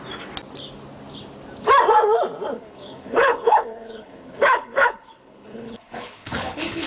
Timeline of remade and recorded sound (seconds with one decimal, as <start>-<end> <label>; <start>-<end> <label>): 0.0-2.5 recorded; 2.5-6.9 remade